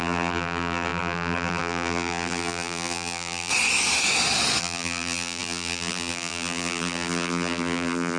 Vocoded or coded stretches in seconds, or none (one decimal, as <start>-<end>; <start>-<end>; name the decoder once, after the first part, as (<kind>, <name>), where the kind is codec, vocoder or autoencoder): 0.0-3.5 (vocoder, BigVGAN v2); 4.6-8.2